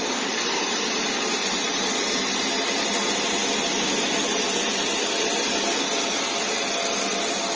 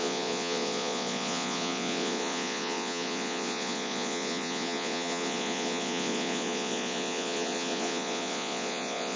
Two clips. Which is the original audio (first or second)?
first